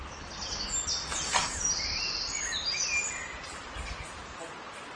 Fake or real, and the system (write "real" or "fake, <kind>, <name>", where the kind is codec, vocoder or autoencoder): real